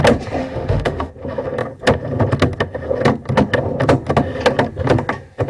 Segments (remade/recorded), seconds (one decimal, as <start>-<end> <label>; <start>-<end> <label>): 0.0-0.4 recorded; 0.4-1.1 remade; 1.1-5.5 recorded